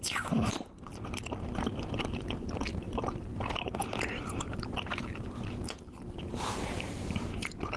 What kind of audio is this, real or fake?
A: fake